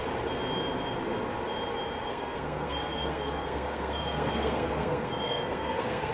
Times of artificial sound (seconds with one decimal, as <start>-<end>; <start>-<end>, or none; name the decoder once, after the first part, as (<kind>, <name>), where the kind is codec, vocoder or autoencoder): 2.1-6.1 (codec, SNAC)